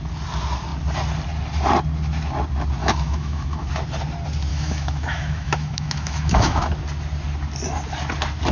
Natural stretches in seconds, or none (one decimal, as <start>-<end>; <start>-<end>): 0.0-2.8; 3.7-4.5; 6.6-8.5